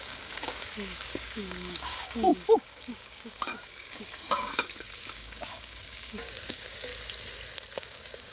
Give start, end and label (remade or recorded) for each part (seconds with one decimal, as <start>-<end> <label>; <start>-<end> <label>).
0.0-6.9 remade; 6.9-7.8 recorded; 7.8-8.3 remade